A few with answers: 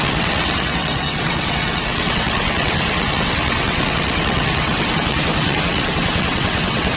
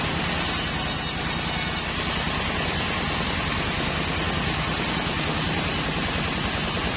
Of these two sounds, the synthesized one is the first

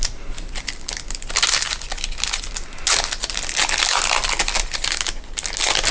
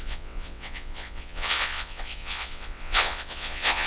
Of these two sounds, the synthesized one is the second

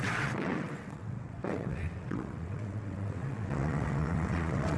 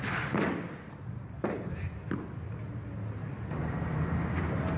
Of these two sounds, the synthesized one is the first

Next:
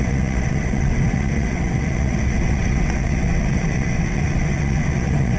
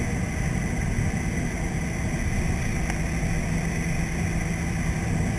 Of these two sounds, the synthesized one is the first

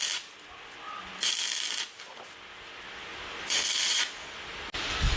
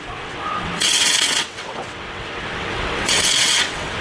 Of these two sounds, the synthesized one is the second